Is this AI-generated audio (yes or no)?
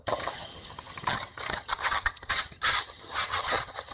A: yes